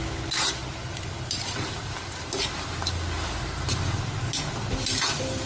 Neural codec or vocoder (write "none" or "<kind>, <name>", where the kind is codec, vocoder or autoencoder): none